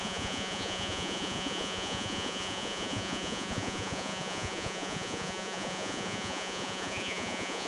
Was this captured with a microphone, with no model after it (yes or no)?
no